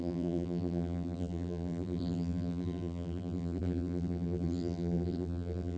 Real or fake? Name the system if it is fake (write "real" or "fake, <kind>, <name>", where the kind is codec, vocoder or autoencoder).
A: fake, vocoder, BigVGAN v2